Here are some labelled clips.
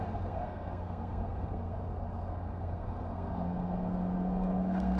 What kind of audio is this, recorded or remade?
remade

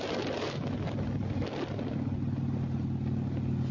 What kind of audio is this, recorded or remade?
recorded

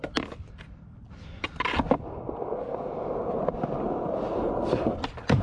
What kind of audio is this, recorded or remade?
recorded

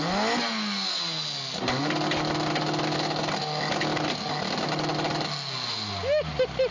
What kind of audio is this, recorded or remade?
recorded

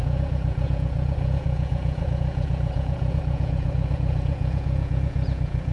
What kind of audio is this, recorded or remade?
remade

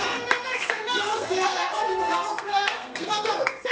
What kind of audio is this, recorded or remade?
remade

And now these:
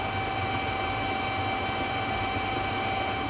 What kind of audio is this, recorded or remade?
recorded